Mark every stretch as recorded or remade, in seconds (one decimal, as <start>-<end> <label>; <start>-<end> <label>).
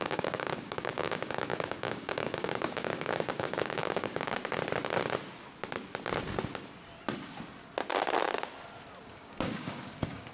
0.0-4.4 remade; 4.4-9.0 recorded; 9.0-10.3 remade